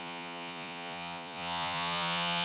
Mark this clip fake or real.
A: fake